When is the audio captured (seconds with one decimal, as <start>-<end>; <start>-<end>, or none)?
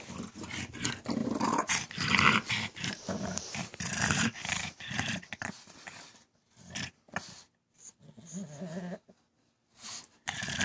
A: 0.0-1.2; 4.5-10.6